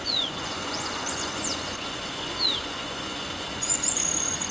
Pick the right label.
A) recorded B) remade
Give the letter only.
B